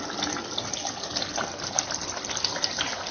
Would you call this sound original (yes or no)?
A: yes